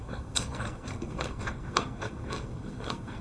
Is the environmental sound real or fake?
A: fake